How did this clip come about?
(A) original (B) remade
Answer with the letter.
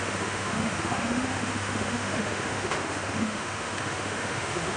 B